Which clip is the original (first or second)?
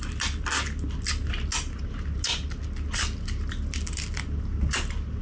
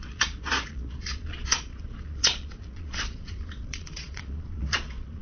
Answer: first